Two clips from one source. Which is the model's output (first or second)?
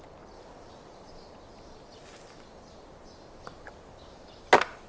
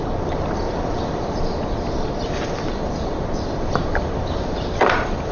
second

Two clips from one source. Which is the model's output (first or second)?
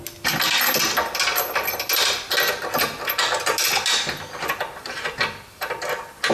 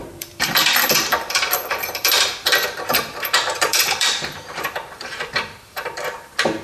second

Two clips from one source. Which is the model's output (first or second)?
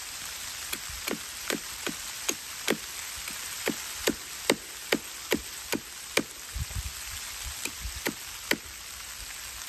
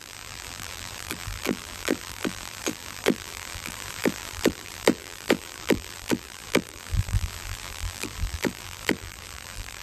second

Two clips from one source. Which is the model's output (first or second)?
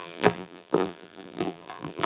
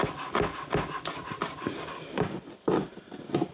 first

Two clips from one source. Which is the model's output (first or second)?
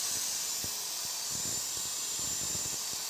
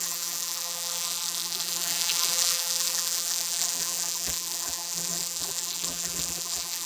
second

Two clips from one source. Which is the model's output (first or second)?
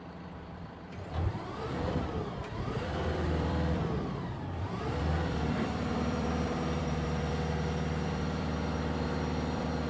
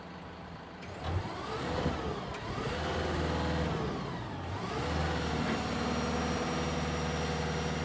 first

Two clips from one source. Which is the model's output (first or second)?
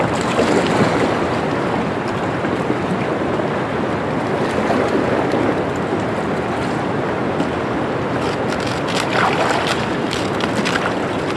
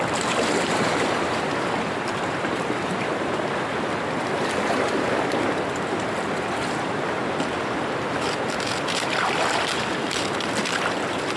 second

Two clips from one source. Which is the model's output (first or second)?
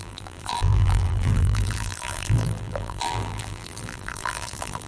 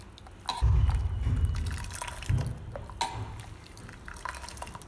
first